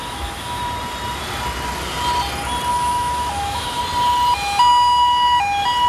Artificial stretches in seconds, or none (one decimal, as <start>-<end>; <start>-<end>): 0.0-0.6; 2.7-3.8